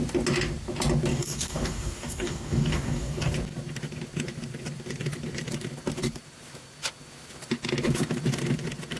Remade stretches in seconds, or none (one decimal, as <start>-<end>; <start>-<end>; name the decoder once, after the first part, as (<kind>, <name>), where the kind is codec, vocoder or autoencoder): 1.1-3.3 (codec, DAC)